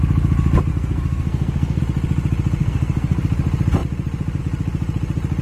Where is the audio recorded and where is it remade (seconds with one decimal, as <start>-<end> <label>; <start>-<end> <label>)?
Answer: 0.0-0.7 recorded; 0.7-1.8 remade; 1.8-2.6 recorded; 2.6-3.2 remade; 3.2-5.4 recorded